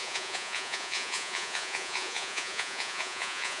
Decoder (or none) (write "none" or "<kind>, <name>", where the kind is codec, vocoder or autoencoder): vocoder, Vocos